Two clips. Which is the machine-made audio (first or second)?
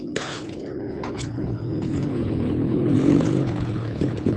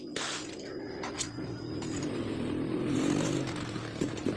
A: first